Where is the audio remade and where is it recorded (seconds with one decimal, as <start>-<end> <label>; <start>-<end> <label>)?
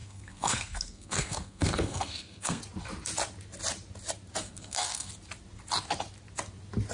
0.0-2.6 remade; 2.6-4.4 recorded; 4.4-5.1 remade; 5.1-6.9 recorded